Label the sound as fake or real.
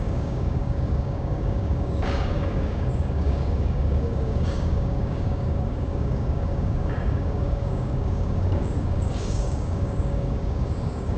fake